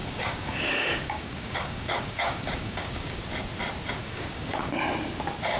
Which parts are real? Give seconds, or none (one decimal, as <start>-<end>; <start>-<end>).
3.2-4.0; 4.7-5.6

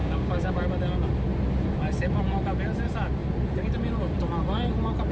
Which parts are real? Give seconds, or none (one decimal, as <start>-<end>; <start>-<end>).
0.5-5.1

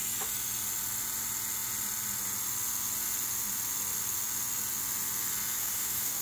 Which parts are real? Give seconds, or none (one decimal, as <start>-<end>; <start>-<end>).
0.0-5.6

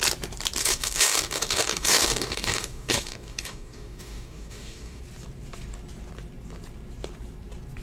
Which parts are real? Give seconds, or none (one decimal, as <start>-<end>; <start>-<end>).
0.0-0.6; 5.0-7.8

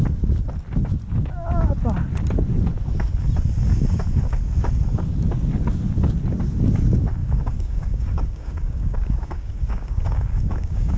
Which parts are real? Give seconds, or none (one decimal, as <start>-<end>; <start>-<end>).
0.0-7.2

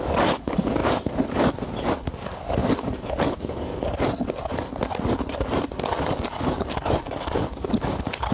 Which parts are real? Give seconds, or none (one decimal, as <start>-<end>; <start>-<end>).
3.7-6.1

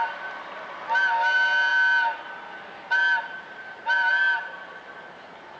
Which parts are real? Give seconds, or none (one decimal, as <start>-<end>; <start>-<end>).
0.0-5.6